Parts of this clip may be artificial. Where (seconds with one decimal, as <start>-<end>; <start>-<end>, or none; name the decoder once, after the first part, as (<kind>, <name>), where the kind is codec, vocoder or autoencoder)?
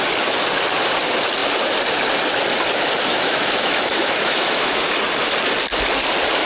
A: 3.1-5.0 (autoencoder, DAC-VAE)